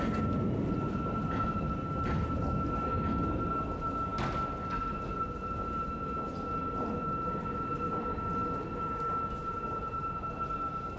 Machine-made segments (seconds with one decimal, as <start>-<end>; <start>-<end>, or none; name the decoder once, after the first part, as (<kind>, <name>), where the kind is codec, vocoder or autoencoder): none